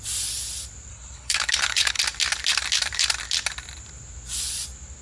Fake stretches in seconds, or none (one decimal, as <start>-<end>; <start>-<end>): 0.9-2.0